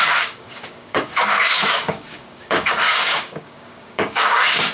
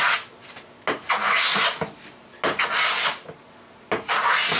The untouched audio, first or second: second